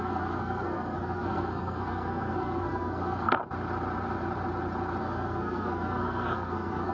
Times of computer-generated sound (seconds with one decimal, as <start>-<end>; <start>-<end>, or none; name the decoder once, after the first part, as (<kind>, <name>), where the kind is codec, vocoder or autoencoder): 0.0-3.4 (codec, SNAC); 5.0-6.9